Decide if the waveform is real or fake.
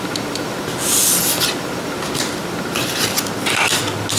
real